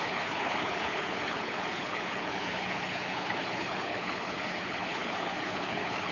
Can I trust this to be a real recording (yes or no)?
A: no